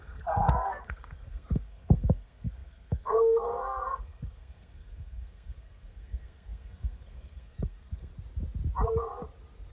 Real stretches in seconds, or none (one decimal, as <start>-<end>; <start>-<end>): 8.1-9.7